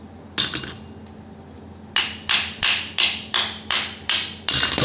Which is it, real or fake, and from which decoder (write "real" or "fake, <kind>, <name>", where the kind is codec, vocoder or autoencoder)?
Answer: real